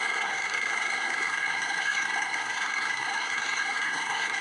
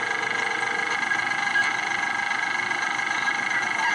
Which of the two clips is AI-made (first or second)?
first